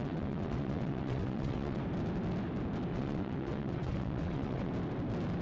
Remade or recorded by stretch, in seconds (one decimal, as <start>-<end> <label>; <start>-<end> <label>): 0.0-1.8 remade; 1.8-2.9 recorded; 2.9-4.7 remade; 4.7-5.4 recorded